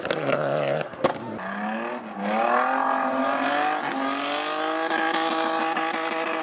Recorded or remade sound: recorded